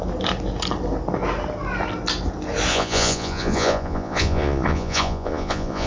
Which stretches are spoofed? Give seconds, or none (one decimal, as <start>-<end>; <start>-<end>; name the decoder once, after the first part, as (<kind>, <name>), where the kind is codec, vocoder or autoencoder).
2.7-5.9 (vocoder, Vocos)